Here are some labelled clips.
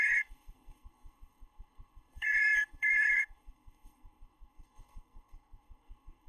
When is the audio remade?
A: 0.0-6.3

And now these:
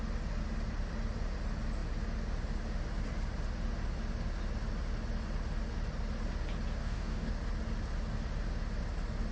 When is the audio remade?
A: 6.8-7.3